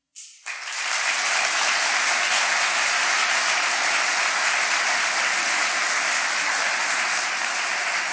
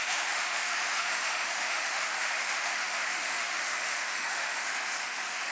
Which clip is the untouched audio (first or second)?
first